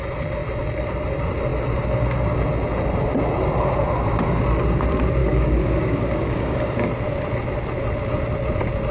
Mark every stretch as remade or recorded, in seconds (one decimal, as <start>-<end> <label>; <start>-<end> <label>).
0.0-5.2 recorded; 5.2-6.9 remade; 6.9-8.9 recorded